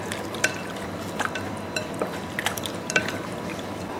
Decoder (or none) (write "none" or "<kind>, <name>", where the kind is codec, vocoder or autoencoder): vocoder, BigVGAN v2